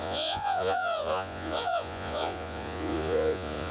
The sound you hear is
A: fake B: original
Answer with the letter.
A